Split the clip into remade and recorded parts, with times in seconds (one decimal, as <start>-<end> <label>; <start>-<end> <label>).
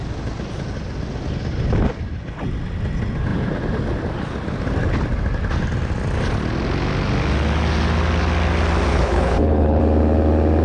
0.0-8.9 recorded; 8.9-9.8 remade; 9.8-10.6 recorded